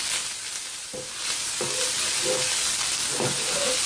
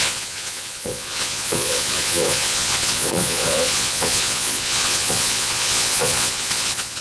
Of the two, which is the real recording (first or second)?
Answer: first